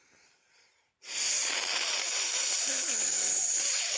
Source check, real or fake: real